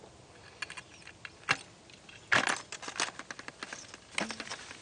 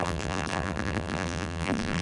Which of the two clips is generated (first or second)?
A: second